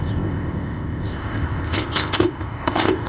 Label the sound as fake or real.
fake